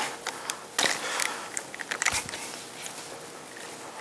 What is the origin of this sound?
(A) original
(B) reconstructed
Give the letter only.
A